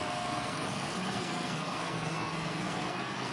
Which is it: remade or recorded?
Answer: remade